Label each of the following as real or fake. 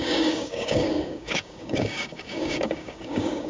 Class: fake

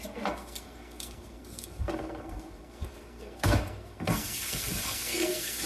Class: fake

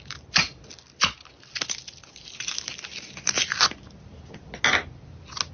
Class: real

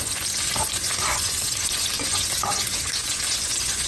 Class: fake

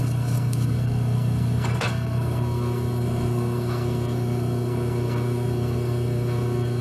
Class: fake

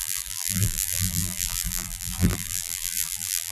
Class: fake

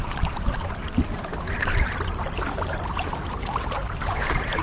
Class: fake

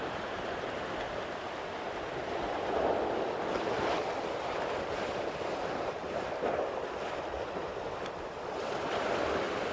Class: fake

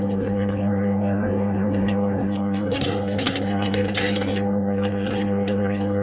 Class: fake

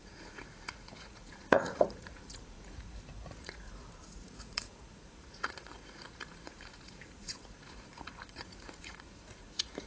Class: fake